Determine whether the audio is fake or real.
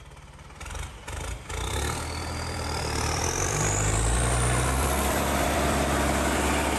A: fake